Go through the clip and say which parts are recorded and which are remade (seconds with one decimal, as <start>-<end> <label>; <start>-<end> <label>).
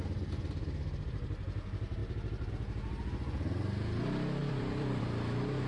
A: 0.0-4.4 recorded; 4.4-5.0 remade; 5.0-5.7 recorded